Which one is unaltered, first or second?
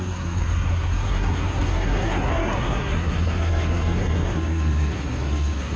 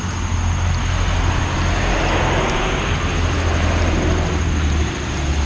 second